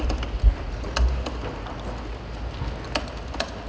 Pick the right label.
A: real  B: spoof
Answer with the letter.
A